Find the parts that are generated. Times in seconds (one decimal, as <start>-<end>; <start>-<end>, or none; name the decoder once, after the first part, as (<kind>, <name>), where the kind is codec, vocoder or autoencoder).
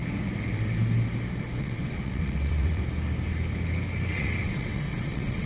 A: 1.6-2.8 (vocoder, WaveNeXt); 4.1-5.5